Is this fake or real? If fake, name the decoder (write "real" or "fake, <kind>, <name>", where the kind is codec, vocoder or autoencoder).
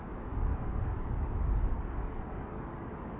fake, codec, DAC